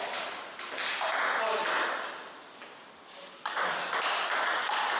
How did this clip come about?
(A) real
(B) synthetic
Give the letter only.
A